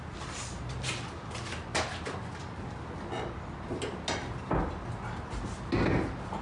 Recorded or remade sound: recorded